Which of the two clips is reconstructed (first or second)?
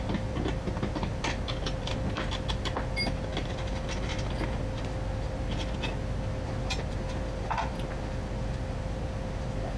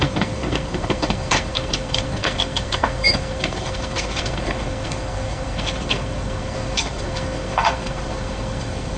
second